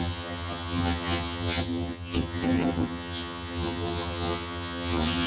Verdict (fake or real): fake